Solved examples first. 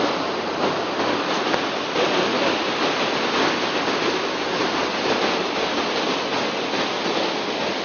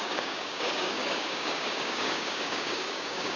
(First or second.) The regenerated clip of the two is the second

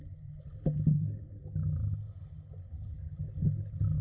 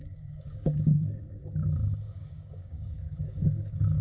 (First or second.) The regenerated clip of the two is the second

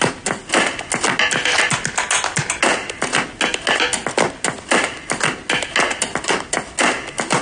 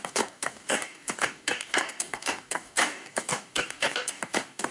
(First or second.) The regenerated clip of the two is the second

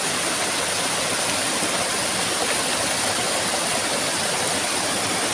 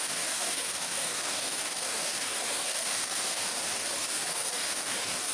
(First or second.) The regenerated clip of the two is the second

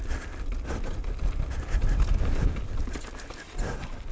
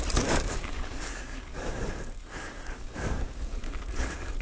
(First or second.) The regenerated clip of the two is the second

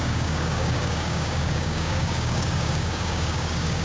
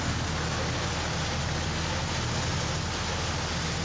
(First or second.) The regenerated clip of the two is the first